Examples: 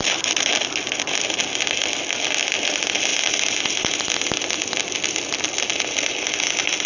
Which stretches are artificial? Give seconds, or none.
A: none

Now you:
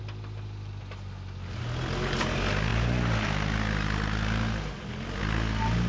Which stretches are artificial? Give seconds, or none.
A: none

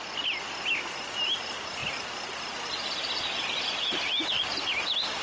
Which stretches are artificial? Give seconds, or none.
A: none

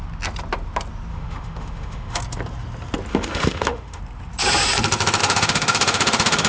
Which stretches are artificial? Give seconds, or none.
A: 1.1-2.2 (autoencoder, DAC-VAE); 3.1-4.0; 5.2-6.5

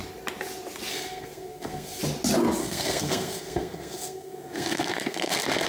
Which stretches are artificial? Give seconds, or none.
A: 0.9-2.0 (codec, SNAC); 2.6-5.7

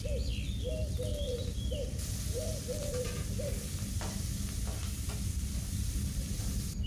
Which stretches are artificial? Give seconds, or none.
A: 1.1-4.2 (vocoder, BigVGAN v2); 4.8-6.4